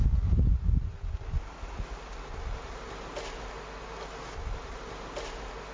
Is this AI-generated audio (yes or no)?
no